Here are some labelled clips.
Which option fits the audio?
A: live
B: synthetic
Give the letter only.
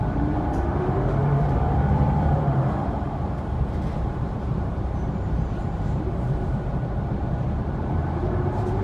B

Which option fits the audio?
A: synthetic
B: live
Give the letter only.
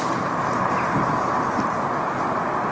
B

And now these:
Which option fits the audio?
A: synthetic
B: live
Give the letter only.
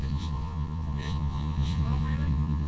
A